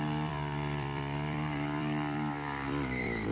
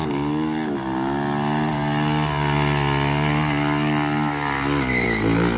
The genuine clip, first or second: second